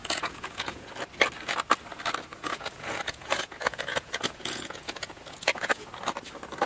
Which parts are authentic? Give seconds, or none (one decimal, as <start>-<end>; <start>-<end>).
0.9-2.3; 5.9-6.7